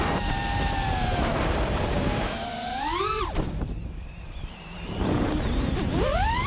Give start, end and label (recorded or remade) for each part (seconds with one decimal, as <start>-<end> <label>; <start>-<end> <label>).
0.0-6.5 remade